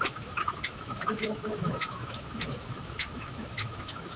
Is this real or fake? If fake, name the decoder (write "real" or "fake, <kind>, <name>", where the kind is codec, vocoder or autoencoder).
fake, autoencoder, DAC-VAE